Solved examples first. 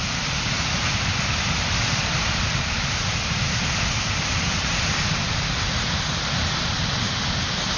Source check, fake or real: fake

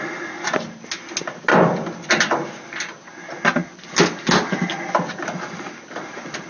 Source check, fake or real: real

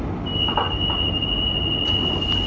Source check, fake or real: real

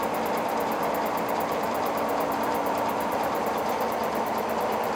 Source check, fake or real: fake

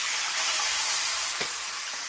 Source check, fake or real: fake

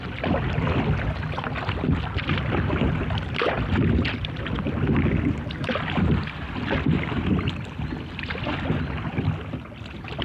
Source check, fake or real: real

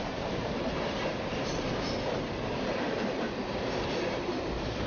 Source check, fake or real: fake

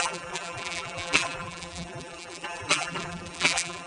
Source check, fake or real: fake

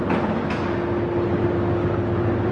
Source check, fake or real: real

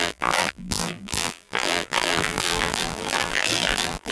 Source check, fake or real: fake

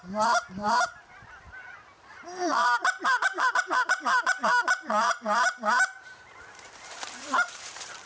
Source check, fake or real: fake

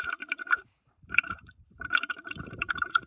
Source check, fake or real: fake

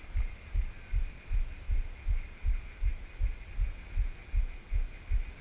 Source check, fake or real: real